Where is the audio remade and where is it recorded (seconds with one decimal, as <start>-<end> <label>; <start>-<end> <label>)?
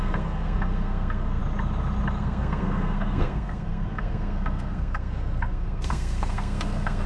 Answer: 0.0-1.4 remade; 1.4-2.2 recorded; 2.2-7.1 remade